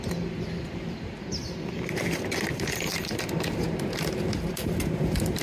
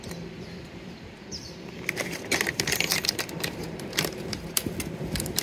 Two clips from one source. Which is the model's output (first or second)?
second